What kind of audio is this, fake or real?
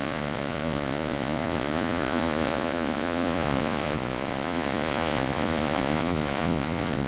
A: fake